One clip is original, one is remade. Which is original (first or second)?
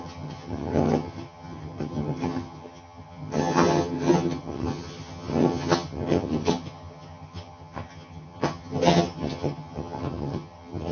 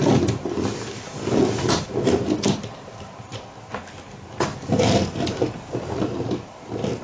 second